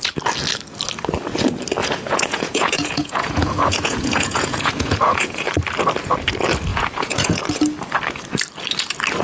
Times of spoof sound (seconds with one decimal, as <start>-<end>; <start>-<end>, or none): 1.8-5.5; 6.7-7.4